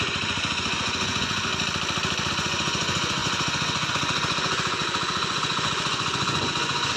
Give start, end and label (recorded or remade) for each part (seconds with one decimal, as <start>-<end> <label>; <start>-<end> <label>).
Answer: 0.0-1.5 remade; 1.5-2.3 recorded; 2.3-7.0 remade